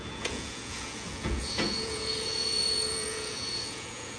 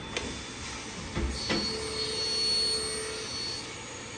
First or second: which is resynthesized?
first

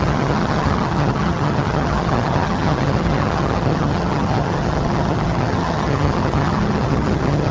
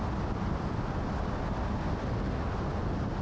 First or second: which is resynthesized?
first